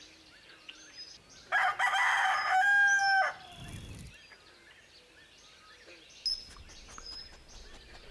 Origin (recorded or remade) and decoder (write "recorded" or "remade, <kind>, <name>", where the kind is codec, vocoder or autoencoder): recorded